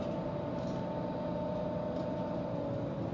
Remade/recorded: recorded